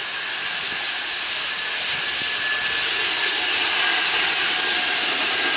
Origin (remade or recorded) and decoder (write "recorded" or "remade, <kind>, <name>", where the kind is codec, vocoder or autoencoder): recorded